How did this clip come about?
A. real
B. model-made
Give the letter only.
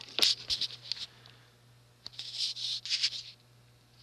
A